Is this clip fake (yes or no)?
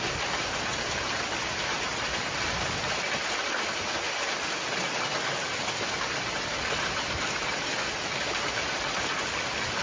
no